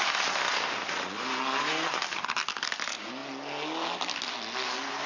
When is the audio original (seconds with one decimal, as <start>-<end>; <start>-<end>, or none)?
0.0-5.1